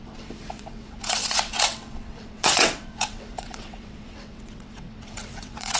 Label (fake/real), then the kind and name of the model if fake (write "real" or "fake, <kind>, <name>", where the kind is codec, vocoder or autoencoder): fake, vocoder, WaveNeXt